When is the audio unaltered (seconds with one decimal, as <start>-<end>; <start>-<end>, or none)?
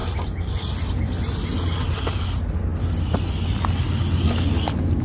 0.0-5.0